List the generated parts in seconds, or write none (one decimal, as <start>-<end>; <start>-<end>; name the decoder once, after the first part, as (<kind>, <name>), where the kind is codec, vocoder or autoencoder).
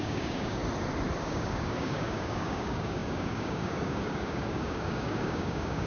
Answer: 0.0-0.6 (codec, DAC); 1.2-5.9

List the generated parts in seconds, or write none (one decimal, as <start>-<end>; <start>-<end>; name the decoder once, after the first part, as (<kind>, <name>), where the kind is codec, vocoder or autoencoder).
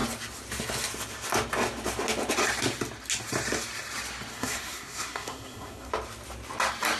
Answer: 4.3-5.9 (codec, SNAC)